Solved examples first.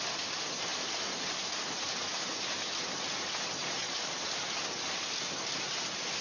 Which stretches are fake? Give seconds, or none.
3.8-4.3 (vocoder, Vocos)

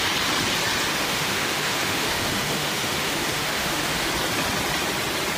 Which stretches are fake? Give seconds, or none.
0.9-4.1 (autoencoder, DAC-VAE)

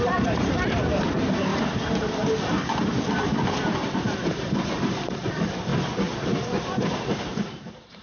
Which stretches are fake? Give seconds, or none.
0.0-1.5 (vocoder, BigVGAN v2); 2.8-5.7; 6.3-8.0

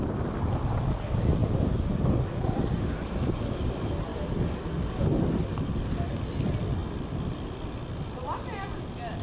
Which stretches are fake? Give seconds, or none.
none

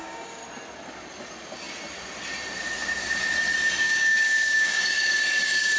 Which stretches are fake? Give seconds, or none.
0.0-0.4 (codec, DAC); 3.8-5.8

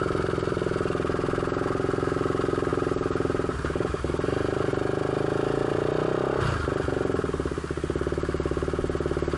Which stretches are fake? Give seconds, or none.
2.7-4.1 (vocoder, BigVGAN v2)

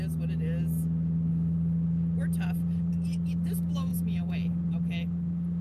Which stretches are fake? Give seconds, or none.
none

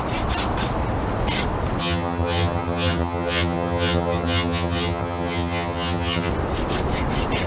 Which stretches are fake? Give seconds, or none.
1.8-6.3 (vocoder, HiFi-GAN)